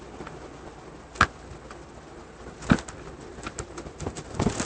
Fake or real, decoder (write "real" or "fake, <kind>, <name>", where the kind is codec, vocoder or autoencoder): real